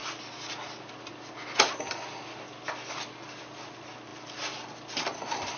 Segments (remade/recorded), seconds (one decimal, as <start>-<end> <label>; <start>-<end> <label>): 0.0-5.6 recorded